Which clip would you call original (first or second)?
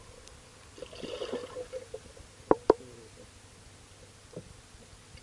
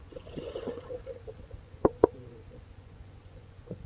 first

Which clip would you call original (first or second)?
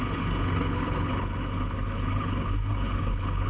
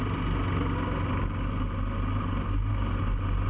second